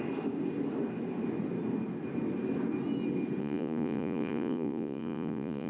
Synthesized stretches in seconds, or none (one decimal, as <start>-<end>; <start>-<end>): 3.4-5.7